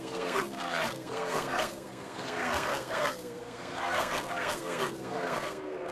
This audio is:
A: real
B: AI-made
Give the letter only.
B